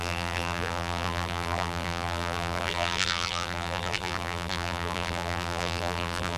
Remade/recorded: remade